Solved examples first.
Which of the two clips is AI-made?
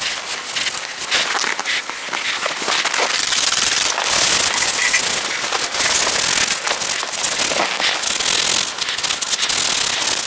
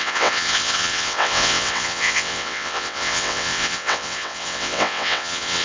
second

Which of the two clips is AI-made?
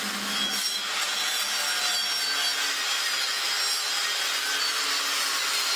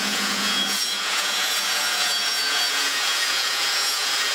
second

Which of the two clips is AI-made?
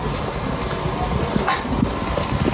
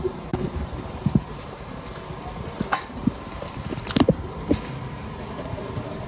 second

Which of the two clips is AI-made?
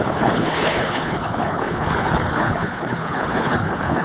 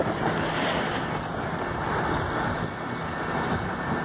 first